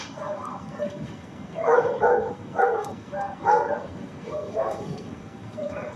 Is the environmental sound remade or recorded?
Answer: remade